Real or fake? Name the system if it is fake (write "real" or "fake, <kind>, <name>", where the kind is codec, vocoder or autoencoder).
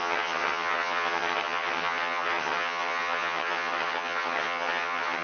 fake, vocoder, HiFi-GAN